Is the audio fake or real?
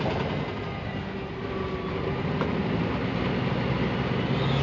real